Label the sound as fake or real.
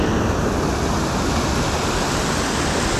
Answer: real